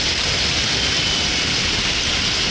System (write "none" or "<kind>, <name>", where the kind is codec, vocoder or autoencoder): none